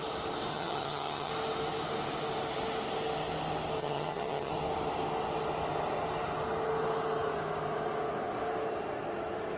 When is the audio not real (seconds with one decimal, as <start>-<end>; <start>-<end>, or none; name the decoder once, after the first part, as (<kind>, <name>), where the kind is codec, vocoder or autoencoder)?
0.5-1.3 (vocoder, HiFi-GAN); 3.8-4.5